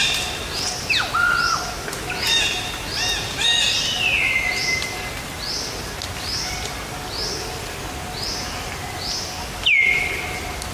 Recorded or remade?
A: recorded